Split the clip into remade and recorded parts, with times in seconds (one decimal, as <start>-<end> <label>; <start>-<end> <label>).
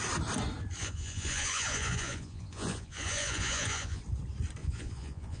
0.0-0.8 recorded; 0.8-4.0 remade; 4.0-4.6 recorded; 4.6-5.4 remade